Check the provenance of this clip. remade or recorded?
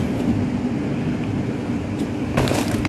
recorded